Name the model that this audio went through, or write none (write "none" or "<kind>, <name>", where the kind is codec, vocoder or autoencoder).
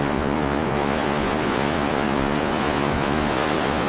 vocoder, Vocos